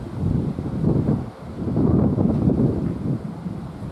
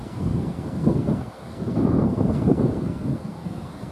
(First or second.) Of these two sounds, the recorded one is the first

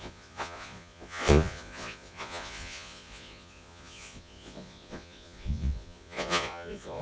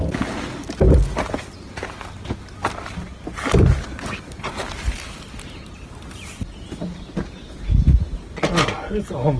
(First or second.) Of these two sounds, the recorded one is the second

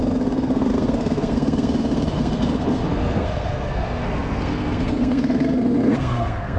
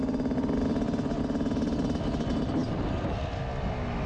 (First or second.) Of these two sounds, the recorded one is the second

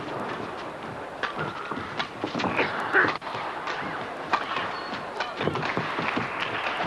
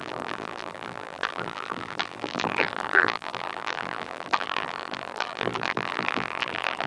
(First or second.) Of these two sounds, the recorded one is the first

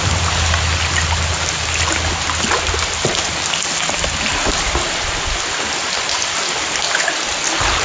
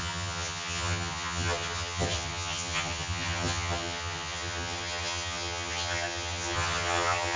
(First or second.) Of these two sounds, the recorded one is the first